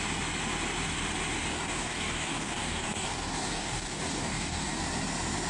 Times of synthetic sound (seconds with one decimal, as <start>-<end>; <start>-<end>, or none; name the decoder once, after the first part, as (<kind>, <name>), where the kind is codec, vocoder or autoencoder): 1.5-4.8 (codec, DAC)